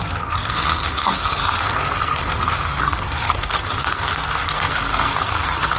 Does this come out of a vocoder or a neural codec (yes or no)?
yes